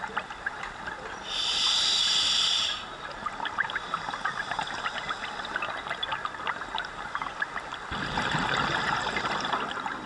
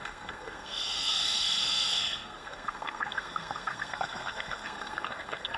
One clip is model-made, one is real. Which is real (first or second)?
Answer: first